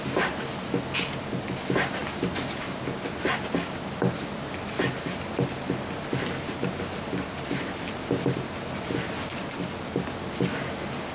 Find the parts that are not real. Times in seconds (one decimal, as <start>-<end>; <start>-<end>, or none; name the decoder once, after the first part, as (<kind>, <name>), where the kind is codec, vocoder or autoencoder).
none

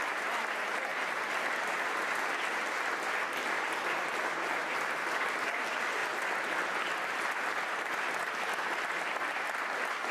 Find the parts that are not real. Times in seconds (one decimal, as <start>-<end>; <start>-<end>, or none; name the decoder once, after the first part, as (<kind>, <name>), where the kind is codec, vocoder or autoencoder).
0.9-2.1 (vocoder, BigVGAN v2); 3.4-5.1

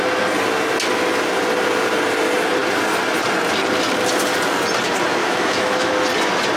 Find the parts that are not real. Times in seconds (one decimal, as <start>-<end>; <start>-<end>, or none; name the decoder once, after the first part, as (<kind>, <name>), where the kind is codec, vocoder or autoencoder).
5.2-5.9 (autoencoder, DAC-VAE)

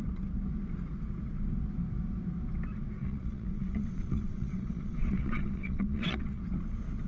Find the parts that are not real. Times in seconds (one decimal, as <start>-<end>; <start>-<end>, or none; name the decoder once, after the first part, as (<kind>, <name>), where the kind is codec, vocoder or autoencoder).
3.0-6.4 (vocoder, WaveNeXt)

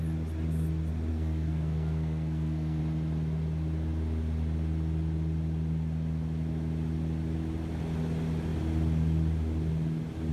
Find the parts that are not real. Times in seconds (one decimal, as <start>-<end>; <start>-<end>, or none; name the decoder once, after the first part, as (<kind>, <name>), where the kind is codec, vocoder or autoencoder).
1.1-2.8 (codec, SNAC)

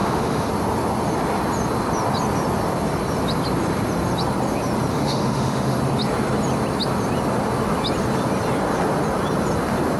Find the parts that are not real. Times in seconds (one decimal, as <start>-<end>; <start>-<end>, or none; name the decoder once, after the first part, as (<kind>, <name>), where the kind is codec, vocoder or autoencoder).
0.0-0.5 (autoencoder, DAC-VAE); 4.9-5.8

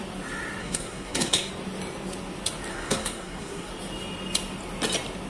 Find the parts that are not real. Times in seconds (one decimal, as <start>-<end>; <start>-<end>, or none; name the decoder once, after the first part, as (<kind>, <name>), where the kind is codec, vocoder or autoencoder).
0.6-1.5 (codec, SNAC); 2.7-3.7